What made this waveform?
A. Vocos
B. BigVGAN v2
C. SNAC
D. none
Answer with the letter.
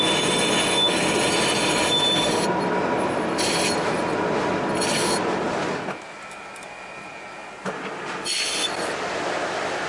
D